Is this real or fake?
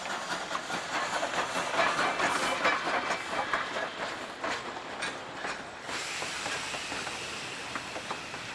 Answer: real